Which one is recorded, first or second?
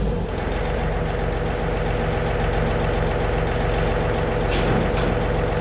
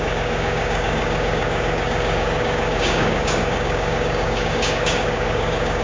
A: first